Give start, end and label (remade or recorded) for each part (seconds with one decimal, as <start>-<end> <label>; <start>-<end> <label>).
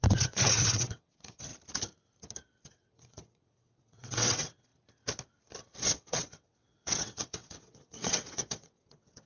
0.0-1.5 remade; 1.5-2.7 recorded; 2.7-4.7 remade; 4.7-5.8 recorded; 5.8-9.3 remade